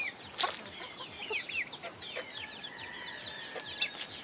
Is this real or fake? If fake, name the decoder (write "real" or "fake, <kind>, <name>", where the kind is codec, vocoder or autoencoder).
real